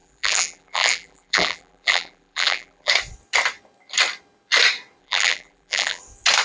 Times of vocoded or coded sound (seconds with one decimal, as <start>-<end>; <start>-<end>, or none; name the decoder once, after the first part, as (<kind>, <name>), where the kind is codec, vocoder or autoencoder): 0.0-2.9 (vocoder, BigVGAN v2); 5.0-6.0